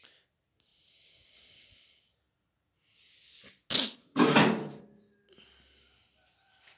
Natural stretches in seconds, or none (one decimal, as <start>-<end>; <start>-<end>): 0.0-6.8

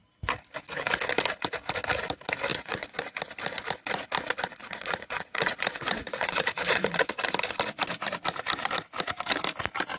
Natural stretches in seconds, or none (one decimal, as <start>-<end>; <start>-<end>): 0.0-2.5; 3.2-4.6; 7.2-10.0